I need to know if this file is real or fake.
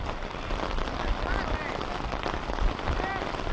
real